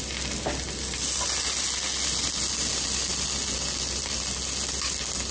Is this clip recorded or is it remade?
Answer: recorded